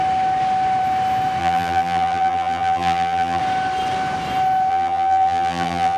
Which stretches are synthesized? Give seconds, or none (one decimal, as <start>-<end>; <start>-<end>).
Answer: 1.4-3.4; 4.7-6.0